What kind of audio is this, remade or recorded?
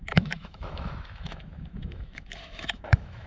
remade